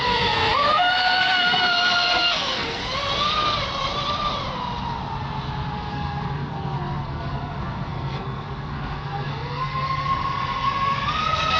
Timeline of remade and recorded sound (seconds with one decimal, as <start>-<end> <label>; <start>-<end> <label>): 0.0-2.8 remade; 2.8-5.7 recorded; 5.7-11.6 remade